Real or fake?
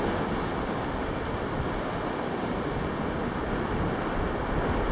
real